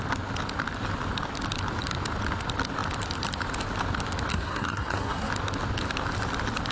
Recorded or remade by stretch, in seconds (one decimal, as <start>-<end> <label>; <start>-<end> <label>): 0.0-4.3 recorded; 4.3-5.3 remade; 5.3-6.7 recorded